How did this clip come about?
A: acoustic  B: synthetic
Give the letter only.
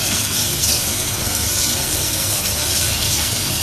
B